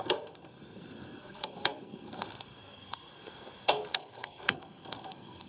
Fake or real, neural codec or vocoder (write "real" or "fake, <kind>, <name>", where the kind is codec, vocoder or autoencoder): fake, codec, SNAC